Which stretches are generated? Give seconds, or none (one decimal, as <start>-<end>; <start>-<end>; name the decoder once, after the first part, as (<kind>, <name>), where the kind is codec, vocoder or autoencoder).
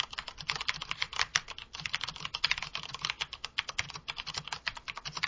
0.0-5.3 (vocoder, BigVGAN v2)